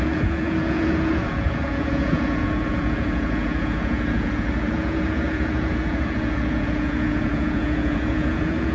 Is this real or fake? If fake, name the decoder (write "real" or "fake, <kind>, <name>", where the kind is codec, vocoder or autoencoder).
fake, vocoder, Vocos